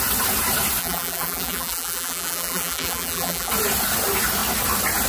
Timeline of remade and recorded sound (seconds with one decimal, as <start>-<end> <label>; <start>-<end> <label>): 0.0-0.8 recorded; 0.8-3.5 remade; 3.5-5.1 recorded